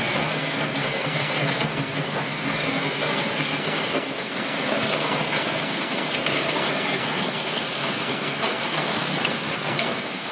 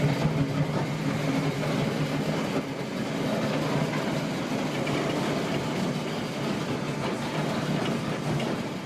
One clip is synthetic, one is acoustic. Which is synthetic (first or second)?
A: first